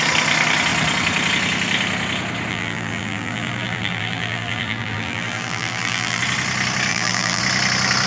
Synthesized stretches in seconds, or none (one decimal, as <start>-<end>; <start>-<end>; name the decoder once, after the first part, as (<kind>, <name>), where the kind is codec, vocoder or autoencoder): 2.5-6.2 (vocoder, BigVGAN v2); 6.9-7.4